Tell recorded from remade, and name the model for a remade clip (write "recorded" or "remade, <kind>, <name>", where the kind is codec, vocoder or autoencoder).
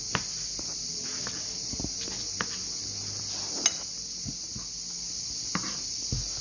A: recorded